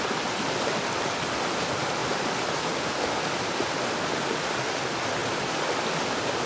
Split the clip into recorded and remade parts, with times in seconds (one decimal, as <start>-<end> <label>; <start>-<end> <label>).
0.0-2.0 recorded; 2.0-3.1 remade; 3.1-5.2 recorded; 5.2-5.9 remade; 5.9-6.5 recorded